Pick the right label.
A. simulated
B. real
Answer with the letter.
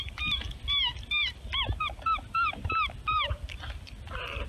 A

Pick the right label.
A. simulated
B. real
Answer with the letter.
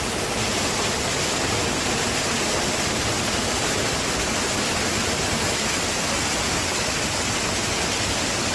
B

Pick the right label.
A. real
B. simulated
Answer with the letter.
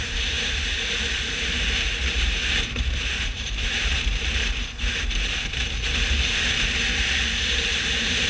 B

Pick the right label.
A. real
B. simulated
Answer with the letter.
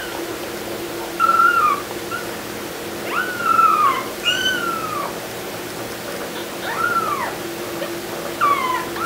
B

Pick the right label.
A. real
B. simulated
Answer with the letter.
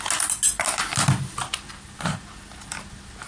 A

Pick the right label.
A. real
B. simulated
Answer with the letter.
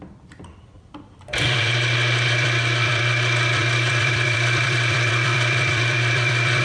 B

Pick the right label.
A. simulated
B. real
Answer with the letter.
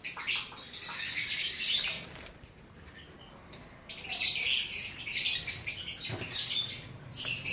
B